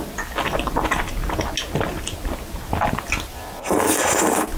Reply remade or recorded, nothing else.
recorded